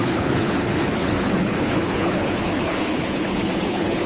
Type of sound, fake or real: fake